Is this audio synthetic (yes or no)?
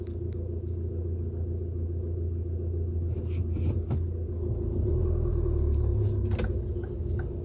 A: no